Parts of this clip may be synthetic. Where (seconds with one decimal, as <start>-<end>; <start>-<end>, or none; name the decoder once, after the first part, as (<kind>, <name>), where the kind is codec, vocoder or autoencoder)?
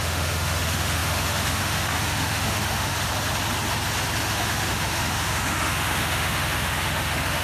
0.0-2.9 (autoencoder, DAC-VAE); 4.2-7.4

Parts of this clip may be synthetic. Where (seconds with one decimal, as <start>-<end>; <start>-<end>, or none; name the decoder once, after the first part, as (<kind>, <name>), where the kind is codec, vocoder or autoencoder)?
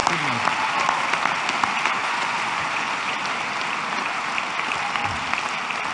2.0-3.1 (vocoder, Vocos)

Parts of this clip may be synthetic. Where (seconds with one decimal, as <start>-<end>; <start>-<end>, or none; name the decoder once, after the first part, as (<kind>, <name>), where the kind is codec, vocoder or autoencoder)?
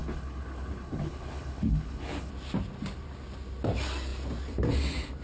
0.0-2.3 (codec, HILCodec)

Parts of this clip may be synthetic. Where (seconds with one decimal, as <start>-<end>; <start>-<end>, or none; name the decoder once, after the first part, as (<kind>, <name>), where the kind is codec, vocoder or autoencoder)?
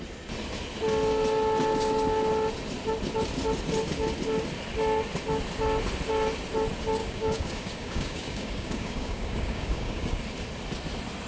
7.0-10.2 (codec, DAC)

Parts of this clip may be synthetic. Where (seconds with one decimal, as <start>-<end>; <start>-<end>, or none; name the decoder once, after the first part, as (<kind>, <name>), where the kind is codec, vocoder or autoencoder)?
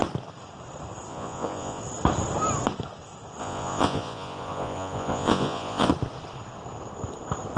1.1-1.8 (vocoder, Vocos); 3.4-5.9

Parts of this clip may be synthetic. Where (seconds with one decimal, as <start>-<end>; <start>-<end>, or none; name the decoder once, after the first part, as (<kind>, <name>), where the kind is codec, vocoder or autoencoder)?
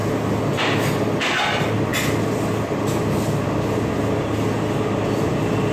0.5-1.9 (vocoder, BigVGAN v2); 5.3-5.7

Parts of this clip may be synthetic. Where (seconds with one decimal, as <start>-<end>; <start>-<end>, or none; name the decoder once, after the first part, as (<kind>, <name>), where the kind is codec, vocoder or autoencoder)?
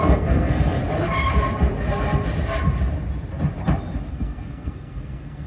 0.0-0.8 (codec, SNAC); 4.1-5.5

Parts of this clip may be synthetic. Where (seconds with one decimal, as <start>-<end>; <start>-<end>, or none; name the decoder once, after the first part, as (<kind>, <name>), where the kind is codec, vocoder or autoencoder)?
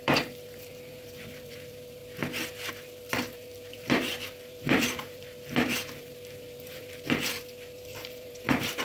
0.0-2.0 (vocoder, BigVGAN v2); 2.7-8.8